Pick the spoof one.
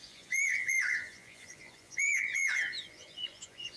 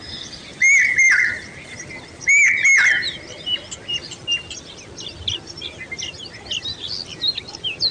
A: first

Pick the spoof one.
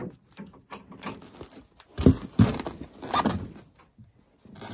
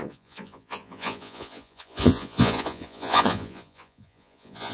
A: second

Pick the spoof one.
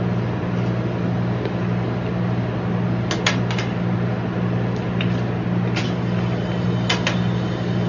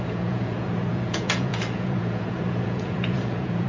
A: second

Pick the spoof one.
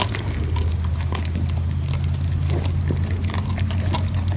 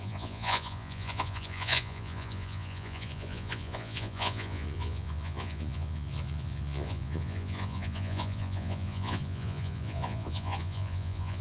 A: second